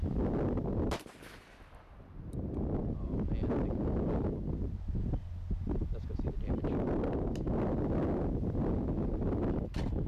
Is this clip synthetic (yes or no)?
no